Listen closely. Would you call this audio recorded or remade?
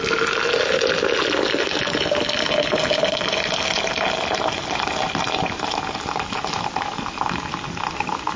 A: recorded